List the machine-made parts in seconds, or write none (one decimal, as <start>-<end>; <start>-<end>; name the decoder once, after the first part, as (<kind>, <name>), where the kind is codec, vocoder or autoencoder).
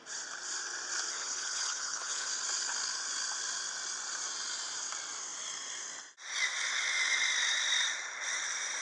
1.1-2.3 (codec, HILCodec)